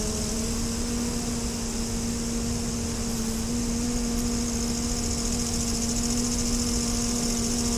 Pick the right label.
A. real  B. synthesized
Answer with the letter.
A